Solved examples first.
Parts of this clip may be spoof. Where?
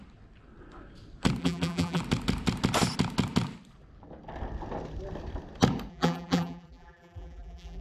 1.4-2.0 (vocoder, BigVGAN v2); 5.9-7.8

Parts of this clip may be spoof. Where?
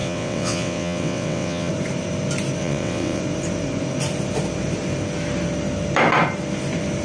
0.0-1.7 (vocoder, WaveNeXt); 2.6-3.2